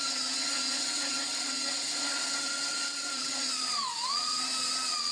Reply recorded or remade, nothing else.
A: remade